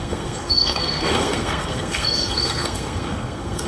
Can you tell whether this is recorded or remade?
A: remade